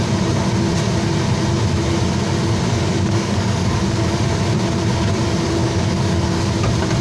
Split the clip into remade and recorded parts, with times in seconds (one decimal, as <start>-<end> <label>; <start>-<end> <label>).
0.0-2.7 recorded; 2.7-4.2 remade; 4.2-5.6 recorded; 5.6-6.5 remade; 6.5-7.0 recorded